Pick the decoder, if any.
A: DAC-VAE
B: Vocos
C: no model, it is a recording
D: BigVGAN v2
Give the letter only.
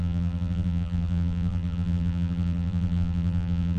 D